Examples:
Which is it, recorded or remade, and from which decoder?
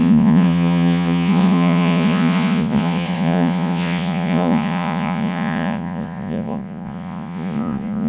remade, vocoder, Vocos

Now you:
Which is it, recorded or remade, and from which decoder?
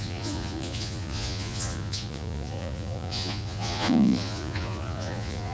remade, vocoder, Vocos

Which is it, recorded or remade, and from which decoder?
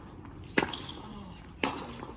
recorded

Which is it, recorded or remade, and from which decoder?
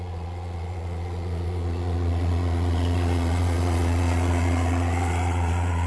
remade, vocoder, Vocos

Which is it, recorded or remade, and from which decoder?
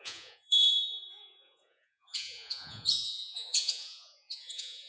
remade, vocoder, Vocos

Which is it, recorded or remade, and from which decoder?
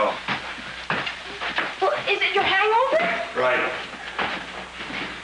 recorded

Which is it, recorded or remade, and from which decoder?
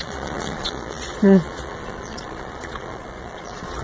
remade, vocoder, Vocos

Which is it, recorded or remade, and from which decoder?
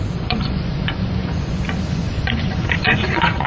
remade, vocoder, Vocos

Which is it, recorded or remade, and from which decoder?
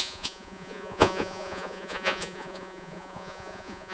remade, vocoder, Vocos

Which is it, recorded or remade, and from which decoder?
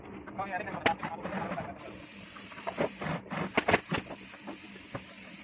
recorded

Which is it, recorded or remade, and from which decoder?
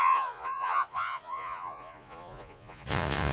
remade, vocoder, Vocos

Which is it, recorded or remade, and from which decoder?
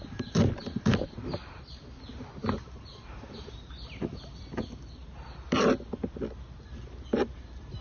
recorded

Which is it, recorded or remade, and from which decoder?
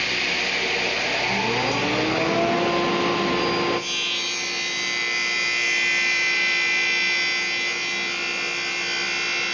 recorded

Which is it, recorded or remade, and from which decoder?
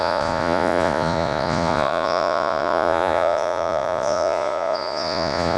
remade, vocoder, Vocos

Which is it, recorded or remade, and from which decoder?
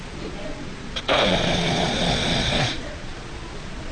remade, vocoder, Vocos